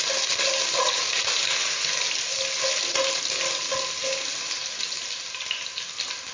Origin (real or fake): real